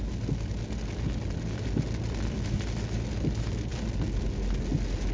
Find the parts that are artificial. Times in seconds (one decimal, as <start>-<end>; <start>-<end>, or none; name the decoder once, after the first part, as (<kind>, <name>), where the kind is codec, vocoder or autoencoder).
none

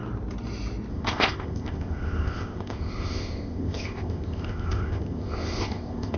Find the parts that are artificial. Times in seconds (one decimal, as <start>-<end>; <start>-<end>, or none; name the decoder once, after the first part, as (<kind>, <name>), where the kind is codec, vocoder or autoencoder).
0.9-6.2 (codec, ZipCodec)

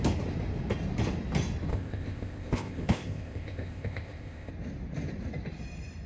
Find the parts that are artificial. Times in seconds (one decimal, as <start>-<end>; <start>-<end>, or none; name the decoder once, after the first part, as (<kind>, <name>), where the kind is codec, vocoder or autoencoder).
1.7-4.5 (codec, ZipCodec)